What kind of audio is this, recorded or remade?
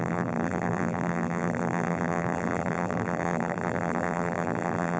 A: remade